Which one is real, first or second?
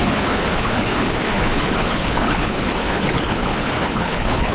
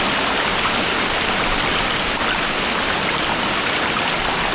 second